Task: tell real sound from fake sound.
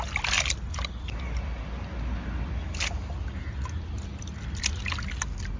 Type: real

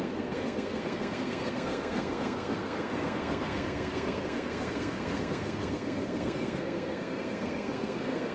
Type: fake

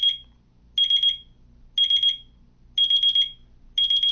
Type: real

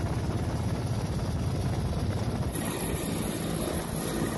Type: real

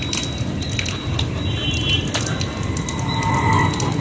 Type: real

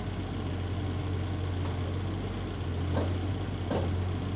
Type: real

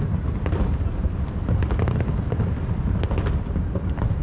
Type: real